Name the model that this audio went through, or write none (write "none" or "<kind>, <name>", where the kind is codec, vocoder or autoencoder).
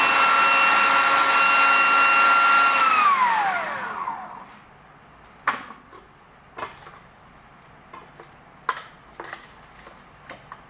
none